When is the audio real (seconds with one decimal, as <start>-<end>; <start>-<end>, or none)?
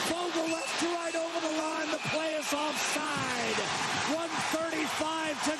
0.0-1.3; 3.1-5.6